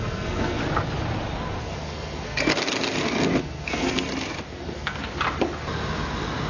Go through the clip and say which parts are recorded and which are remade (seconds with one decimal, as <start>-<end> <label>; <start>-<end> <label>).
0.0-0.6 remade; 0.6-1.6 recorded; 1.6-2.5 remade; 2.5-3.4 recorded; 3.4-4.1 remade; 4.1-4.6 recorded; 4.6-5.0 remade; 5.0-6.5 recorded